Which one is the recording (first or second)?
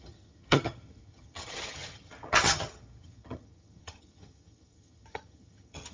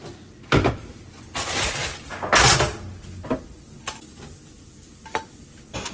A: second